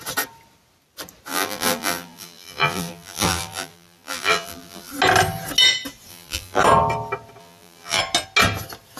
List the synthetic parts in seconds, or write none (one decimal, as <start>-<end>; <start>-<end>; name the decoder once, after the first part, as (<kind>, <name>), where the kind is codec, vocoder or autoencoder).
1.3-4.9 (vocoder, BigVGAN v2); 6.1-6.6; 7.4-8.0